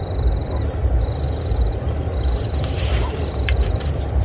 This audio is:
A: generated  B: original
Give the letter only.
A